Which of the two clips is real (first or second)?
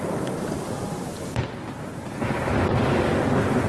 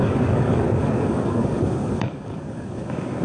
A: first